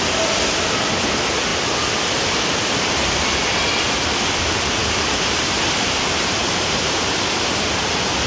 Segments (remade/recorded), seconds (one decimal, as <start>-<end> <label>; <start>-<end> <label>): 0.0-4.8 recorded; 4.8-7.6 remade; 7.6-8.3 recorded